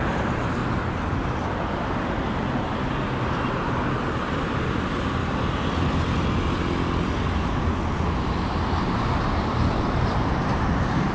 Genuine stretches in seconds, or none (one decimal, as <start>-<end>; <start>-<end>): 0.6-1.3; 5.2-8.8

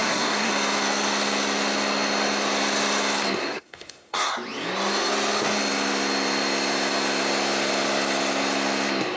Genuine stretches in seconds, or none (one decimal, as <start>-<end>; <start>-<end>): 0.5-3.4; 4.3-9.2

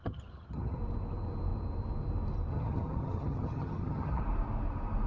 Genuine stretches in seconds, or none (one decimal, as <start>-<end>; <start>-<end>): 0.8-2.5; 4.2-5.1

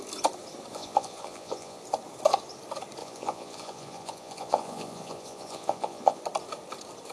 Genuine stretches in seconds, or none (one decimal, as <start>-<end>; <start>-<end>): 0.0-0.7; 1.8-3.0; 6.2-7.1